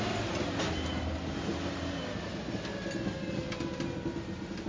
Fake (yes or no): no